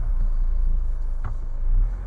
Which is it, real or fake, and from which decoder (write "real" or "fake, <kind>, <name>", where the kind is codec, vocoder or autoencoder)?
real